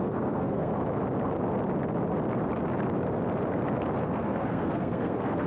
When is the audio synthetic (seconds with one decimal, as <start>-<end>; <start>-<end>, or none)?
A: 0.0-0.7; 4.0-5.5